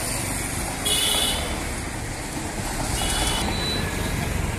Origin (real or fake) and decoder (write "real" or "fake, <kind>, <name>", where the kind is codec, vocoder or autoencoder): real